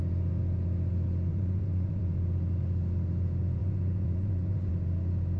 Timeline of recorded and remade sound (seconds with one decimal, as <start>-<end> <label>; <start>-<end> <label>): 0.0-1.3 recorded; 1.3-2.0 remade; 2.0-3.6 recorded; 3.6-4.7 remade; 4.7-5.4 recorded